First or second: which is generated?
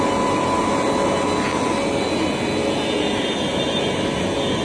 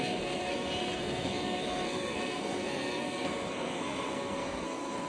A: second